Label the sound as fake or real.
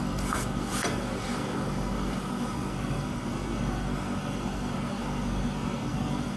fake